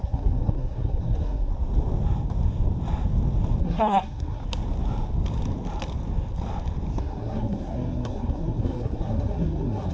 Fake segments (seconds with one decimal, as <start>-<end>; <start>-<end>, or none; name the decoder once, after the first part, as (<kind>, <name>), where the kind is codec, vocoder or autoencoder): 0.0-1.5 (codec, SNAC); 3.6-4.4; 7.0-9.9